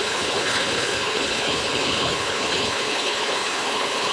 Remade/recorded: remade